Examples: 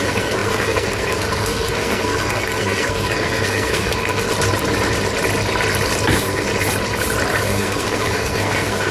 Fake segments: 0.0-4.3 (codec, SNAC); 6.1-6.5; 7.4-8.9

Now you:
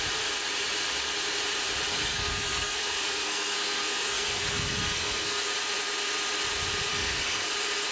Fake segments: 1.9-5.4 (codec, SNAC); 6.9-7.5

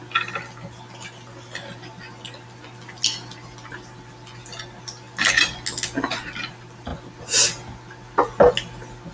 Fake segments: none

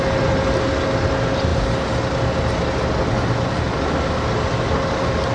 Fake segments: none

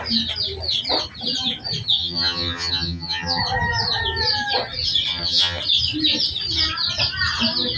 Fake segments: 2.0-3.4 (vocoder, HiFi-GAN); 5.1-5.6